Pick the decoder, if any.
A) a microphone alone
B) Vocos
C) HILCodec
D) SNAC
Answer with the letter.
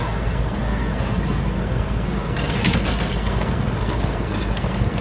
D